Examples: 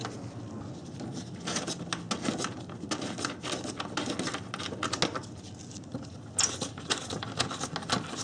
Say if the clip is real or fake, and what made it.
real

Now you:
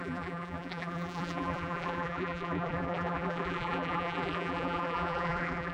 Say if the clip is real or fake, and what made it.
fake, vocoder, BigVGAN v2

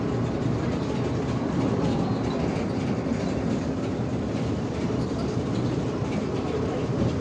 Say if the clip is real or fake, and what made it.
real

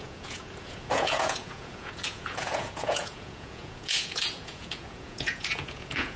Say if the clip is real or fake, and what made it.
fake, vocoder, Vocos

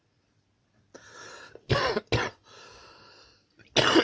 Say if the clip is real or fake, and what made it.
real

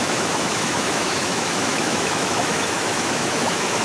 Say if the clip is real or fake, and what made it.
fake, autoencoder, DAC-VAE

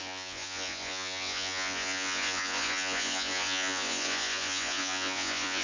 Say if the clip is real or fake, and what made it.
fake, vocoder, Vocos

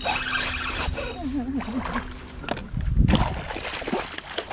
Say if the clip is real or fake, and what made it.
real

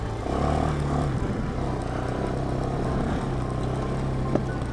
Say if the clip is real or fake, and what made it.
real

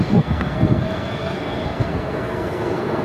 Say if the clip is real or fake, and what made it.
fake, codec, SNAC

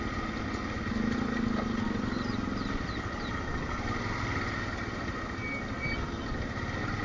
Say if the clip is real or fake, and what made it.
real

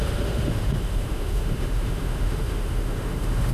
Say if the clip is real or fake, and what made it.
fake, autoencoder, DAC-VAE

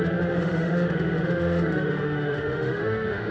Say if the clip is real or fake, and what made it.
fake, autoencoder, DAC-VAE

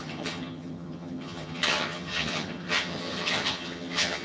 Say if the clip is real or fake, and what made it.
fake, vocoder, HiFi-GAN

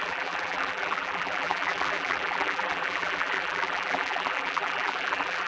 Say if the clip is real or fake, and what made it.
fake, vocoder, BigVGAN v2